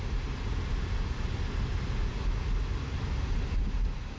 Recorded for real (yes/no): yes